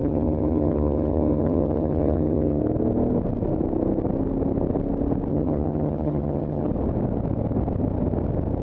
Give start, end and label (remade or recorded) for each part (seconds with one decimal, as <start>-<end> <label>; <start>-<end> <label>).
0.0-2.6 remade; 2.6-5.3 recorded; 5.3-6.7 remade; 6.7-8.6 recorded